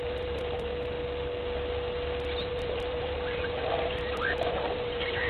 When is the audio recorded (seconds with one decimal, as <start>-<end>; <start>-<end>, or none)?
0.7-2.5